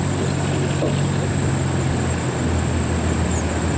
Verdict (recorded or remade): recorded